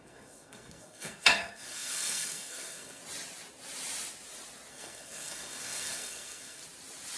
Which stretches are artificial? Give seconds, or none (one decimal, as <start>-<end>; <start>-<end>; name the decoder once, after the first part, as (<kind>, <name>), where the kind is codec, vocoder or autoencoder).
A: 0.0-3.0 (codec, SNAC); 4.7-6.6

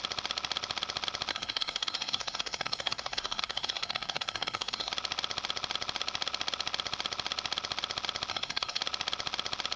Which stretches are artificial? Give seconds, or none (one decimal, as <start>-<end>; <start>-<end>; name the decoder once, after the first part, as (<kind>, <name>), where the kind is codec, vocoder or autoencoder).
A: 1.3-4.9 (codec, SNAC); 8.3-8.8